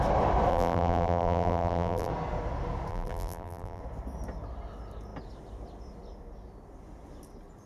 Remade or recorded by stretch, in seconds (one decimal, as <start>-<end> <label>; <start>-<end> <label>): 0.0-0.5 recorded; 0.5-2.1 remade; 2.1-2.9 recorded; 2.9-3.8 remade; 3.8-7.7 recorded